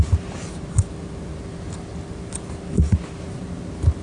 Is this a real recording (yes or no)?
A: yes